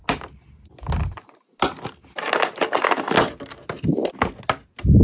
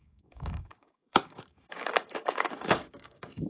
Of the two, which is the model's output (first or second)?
second